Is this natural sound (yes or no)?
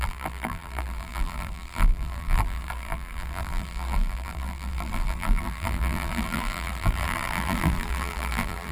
no